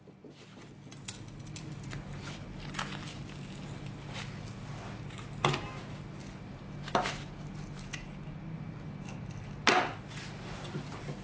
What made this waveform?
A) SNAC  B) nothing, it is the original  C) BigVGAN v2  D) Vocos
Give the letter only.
B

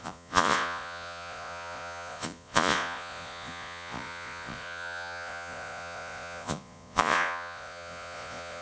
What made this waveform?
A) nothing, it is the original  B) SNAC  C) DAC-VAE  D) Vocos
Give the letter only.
D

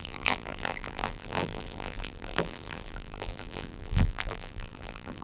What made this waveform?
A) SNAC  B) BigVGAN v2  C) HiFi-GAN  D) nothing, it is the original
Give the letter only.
B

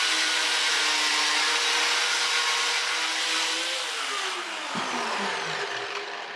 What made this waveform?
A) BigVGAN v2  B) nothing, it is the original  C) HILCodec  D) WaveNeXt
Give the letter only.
B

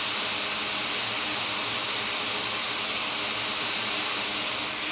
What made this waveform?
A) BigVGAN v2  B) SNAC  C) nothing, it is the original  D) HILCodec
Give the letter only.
C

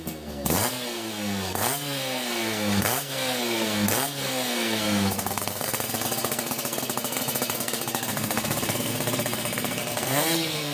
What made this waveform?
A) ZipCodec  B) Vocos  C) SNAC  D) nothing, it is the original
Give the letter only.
C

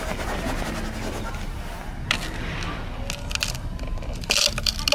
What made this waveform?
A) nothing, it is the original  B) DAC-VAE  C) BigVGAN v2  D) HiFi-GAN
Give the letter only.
A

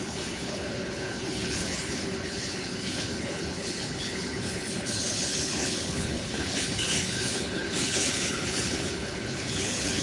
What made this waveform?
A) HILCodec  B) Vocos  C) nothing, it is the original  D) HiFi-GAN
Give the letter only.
A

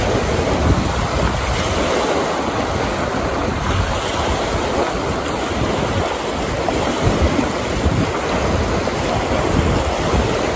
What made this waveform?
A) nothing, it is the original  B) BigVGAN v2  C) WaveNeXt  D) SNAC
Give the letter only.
A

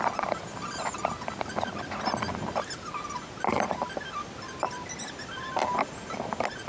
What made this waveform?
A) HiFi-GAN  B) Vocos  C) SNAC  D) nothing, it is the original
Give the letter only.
D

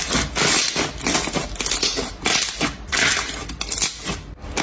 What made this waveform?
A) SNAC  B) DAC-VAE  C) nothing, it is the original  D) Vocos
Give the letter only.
C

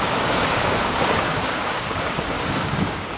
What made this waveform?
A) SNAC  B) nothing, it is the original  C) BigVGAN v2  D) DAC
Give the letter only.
D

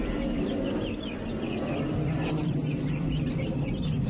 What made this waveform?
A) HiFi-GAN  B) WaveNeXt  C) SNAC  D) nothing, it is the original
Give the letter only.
D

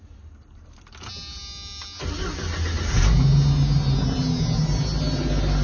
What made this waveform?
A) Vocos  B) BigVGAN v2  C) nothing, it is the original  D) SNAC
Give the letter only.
C